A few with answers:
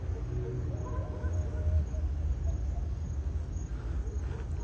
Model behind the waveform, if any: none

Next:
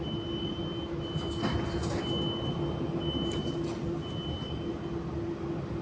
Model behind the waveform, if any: none